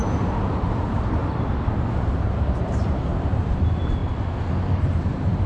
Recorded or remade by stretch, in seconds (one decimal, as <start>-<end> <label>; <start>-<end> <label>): 0.0-1.2 remade; 1.2-1.9 recorded; 1.9-4.0 remade; 4.0-4.8 recorded; 4.8-5.5 remade